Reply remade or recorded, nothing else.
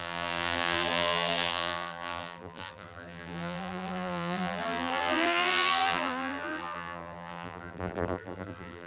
remade